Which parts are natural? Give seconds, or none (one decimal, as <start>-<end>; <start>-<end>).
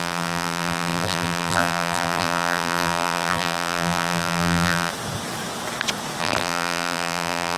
4.9-6.2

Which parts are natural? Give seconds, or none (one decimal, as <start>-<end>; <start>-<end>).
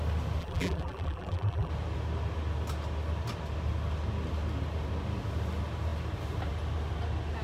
0.0-0.4; 1.7-7.4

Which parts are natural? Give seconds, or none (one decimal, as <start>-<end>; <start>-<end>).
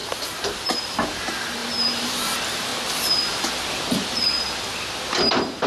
0.8-1.6; 2.2-5.7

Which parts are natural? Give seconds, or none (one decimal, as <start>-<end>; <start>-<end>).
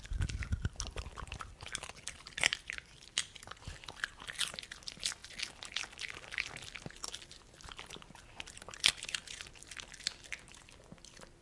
0.0-11.4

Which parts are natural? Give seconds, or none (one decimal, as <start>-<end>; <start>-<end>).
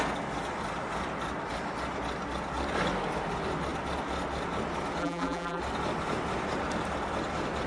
0.0-5.0; 5.6-7.7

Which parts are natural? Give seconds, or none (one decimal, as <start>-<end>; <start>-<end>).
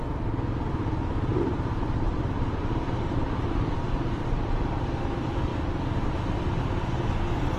0.0-1.3; 4.2-7.6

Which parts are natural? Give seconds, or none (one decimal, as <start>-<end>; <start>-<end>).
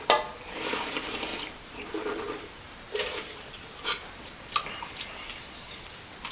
0.0-1.3; 4.4-6.3